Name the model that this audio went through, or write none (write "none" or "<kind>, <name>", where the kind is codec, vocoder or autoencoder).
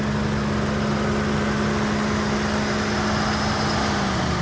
none